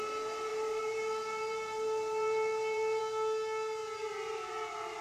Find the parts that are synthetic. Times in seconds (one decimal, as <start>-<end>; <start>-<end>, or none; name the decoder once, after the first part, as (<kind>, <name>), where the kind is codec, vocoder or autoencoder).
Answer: 0.5-3.0 (vocoder, BigVGAN v2); 3.8-4.5